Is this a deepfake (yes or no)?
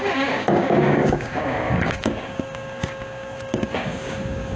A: yes